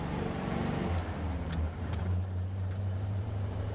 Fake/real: fake